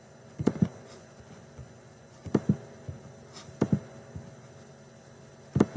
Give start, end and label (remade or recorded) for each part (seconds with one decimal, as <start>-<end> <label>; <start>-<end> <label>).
0.0-2.2 remade; 2.2-5.8 recorded